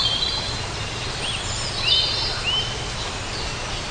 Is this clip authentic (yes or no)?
yes